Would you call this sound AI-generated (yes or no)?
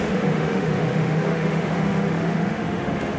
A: yes